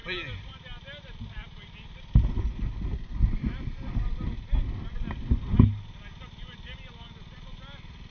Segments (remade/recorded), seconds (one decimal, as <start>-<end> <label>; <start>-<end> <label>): 0.0-8.1 recorded